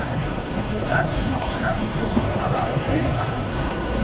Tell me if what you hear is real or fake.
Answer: fake